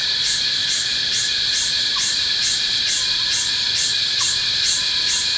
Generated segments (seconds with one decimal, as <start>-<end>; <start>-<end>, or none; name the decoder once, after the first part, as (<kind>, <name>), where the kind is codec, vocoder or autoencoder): 0.0-5.4 (vocoder, BigVGAN v2)